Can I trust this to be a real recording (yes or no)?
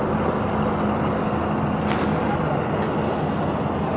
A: yes